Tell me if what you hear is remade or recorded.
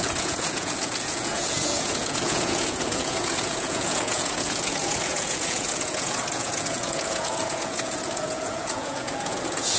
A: remade